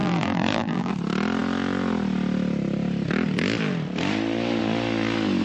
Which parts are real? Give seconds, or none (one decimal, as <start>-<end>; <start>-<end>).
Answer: 0.9-5.4